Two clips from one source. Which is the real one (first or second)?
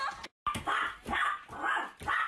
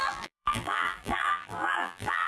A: first